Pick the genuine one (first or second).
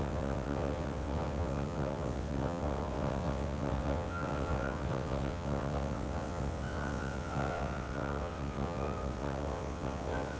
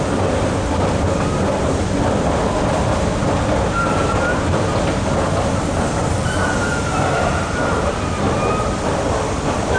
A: second